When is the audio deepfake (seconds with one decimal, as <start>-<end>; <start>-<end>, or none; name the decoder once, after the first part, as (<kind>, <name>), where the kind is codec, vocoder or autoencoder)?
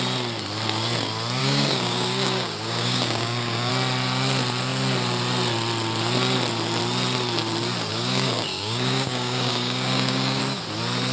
1.4-3.7 (codec, DAC); 7.9-10.4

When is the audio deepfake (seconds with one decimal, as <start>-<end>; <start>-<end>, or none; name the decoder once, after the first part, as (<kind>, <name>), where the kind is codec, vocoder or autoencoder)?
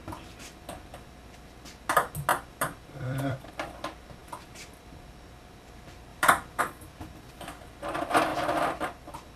2.3-3.5 (vocoder, BigVGAN v2); 4.2-4.8; 6.1-6.6; 8.3-9.4